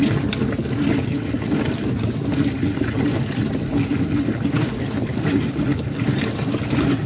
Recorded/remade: recorded